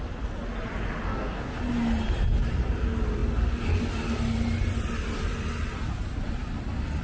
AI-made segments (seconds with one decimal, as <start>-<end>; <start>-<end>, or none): 1.1-1.6